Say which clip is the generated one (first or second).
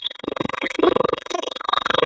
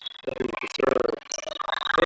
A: first